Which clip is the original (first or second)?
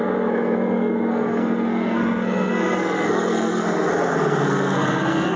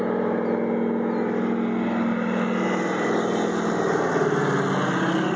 second